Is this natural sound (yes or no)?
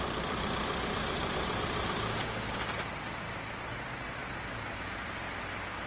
yes